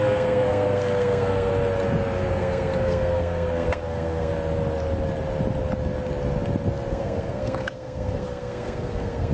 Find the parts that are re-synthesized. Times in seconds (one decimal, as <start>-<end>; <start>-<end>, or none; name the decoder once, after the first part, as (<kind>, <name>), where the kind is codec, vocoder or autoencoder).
0.0-1.5 (codec, SNAC); 2.3-4.3; 6.9-9.3